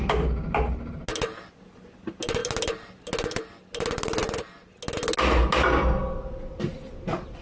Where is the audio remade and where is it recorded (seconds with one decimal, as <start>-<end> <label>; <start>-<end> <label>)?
0.0-7.4 recorded